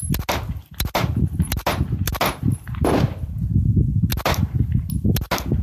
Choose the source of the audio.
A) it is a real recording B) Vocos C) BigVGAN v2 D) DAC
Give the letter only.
A